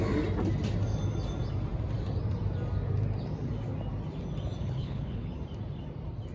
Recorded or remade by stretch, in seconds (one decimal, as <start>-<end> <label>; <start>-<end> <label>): 0.0-4.6 recorded; 4.6-5.3 remade; 5.3-6.3 recorded